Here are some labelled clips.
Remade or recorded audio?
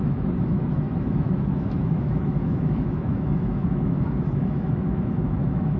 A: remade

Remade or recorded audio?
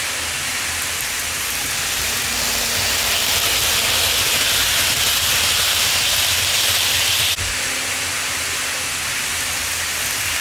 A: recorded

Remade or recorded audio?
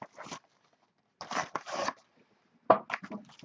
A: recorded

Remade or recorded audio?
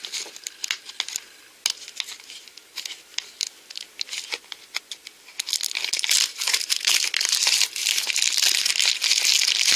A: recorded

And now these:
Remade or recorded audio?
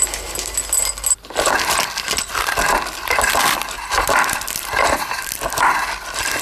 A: recorded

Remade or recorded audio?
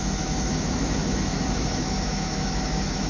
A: remade